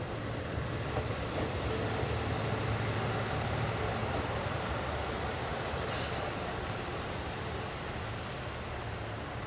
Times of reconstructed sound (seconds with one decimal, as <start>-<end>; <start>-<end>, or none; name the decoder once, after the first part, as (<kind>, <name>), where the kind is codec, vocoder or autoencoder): 4.0-4.6 (vocoder, BigVGAN v2); 5.5-7.5